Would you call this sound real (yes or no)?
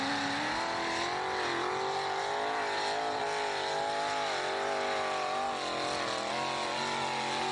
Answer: yes